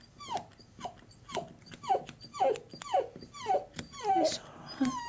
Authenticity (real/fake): real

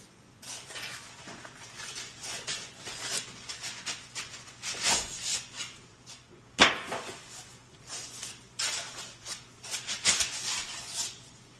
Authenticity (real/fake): fake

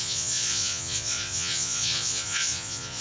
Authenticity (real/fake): fake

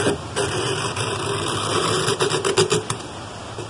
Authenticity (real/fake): real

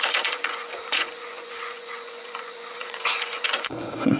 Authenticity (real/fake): fake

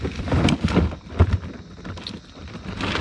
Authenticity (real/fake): real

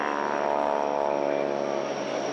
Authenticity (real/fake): real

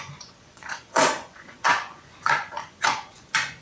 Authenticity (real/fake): fake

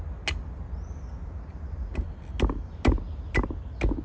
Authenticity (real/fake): real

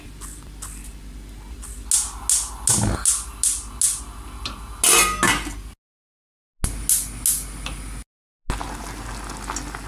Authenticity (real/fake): real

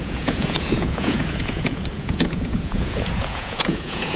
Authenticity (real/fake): fake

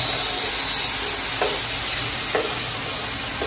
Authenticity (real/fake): real